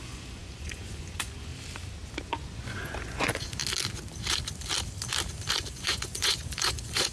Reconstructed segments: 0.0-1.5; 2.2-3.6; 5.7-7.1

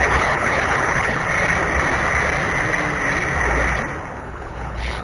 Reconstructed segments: 0.0-1.2; 4.2-5.0

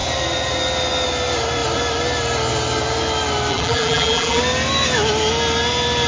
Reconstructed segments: 3.5-4.4

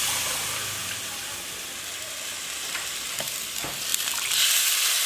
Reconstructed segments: none

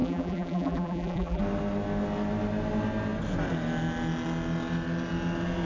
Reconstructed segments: 0.0-1.4

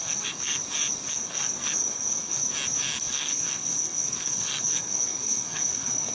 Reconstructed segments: 0.0-0.6; 1.1-2.4; 3.0-6.1

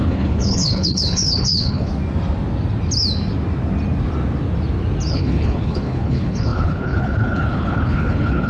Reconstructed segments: 0.0-1.9; 5.1-8.5